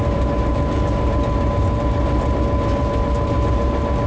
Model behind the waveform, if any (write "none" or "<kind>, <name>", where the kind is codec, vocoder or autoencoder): vocoder, BigVGAN v2